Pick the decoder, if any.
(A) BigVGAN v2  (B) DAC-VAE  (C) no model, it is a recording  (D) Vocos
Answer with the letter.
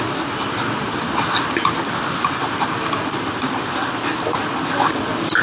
C